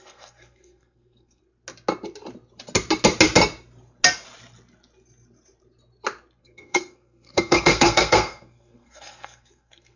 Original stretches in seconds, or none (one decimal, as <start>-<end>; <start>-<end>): 1.4-6.4